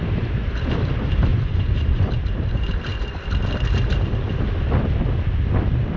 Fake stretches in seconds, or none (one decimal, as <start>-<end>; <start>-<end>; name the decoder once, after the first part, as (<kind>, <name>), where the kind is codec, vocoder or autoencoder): 1.3-2.1 (vocoder, Vocos)